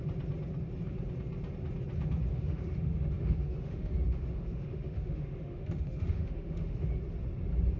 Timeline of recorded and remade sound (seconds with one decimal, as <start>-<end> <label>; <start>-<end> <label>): 0.0-2.3 recorded; 2.3-7.0 remade; 7.0-7.8 recorded